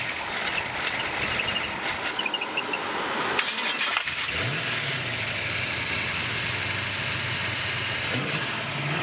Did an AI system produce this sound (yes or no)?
no